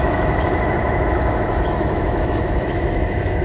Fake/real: fake